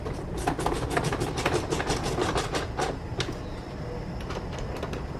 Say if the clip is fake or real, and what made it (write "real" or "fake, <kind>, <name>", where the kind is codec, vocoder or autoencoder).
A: real